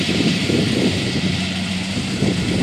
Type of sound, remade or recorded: remade